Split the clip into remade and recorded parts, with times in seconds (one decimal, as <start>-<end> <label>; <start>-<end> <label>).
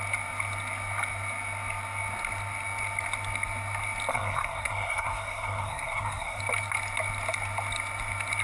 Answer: 0.0-4.1 recorded; 4.1-6.4 remade; 6.4-8.4 recorded